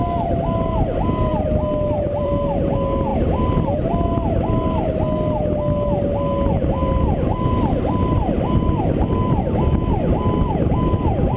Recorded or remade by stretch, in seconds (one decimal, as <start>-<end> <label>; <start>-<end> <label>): 0.0-1.3 recorded; 1.3-2.6 remade; 2.6-11.4 recorded